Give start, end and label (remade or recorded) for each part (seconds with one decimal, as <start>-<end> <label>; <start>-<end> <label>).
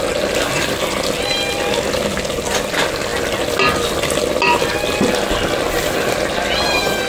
0.0-7.1 recorded